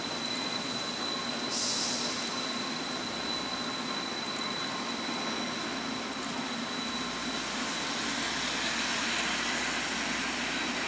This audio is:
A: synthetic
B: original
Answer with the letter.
B